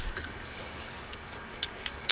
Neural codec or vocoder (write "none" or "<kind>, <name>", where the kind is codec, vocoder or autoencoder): codec, DAC